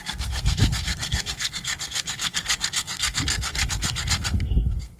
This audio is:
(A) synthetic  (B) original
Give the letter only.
A